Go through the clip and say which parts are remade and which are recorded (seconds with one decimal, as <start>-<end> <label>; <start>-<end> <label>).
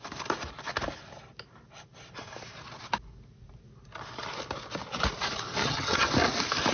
0.0-5.6 recorded; 5.6-6.1 remade; 6.1-6.7 recorded